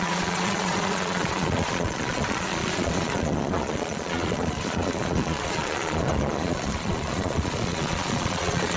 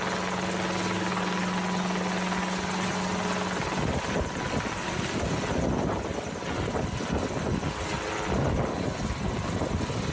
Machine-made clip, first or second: first